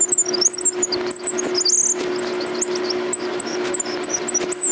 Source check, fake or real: real